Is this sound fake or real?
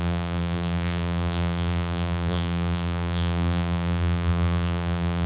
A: fake